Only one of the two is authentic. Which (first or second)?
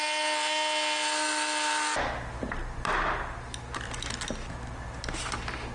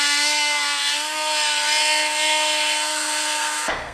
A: first